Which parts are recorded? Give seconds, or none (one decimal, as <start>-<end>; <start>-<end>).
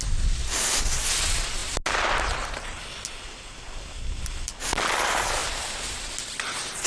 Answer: 0.0-6.9